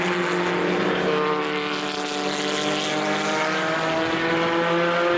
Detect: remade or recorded recorded